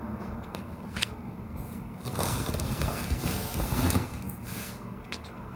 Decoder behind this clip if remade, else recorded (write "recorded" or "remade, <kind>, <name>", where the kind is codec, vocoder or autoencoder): remade, codec, SNAC